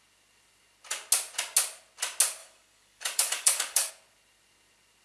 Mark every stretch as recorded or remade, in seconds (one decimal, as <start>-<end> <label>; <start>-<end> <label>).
0.0-2.4 recorded; 2.4-3.9 remade; 3.9-5.0 recorded